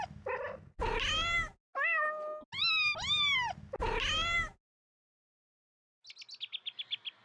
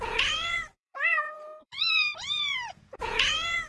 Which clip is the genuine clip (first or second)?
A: first